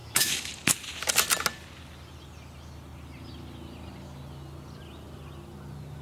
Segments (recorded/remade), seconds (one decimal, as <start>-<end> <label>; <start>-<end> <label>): 0.0-0.5 remade; 0.5-6.0 recorded